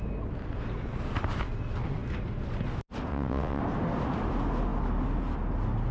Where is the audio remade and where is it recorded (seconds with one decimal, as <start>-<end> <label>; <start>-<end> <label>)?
0.0-3.1 recorded; 3.1-3.6 remade; 3.6-5.9 recorded